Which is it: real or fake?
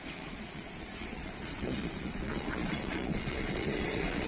fake